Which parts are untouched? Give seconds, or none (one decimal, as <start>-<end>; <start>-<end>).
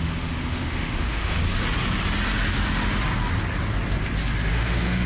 1.4-4.5